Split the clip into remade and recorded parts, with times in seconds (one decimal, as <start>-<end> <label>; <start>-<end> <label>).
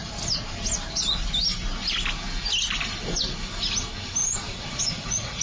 0.0-4.2 recorded; 4.2-5.4 remade